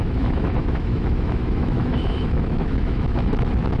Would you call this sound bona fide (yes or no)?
no